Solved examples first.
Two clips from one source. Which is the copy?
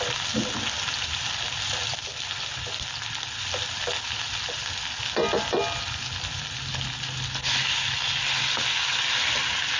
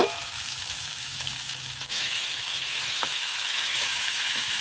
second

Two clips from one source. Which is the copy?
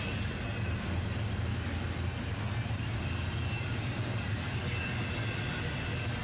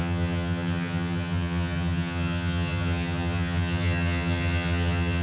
second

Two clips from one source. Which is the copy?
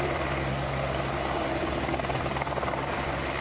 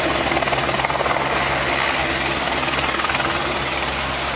first